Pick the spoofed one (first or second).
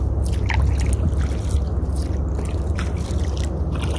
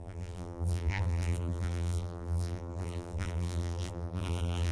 second